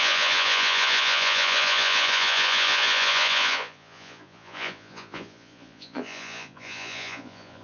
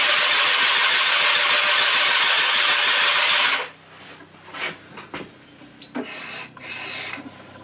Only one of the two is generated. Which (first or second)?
first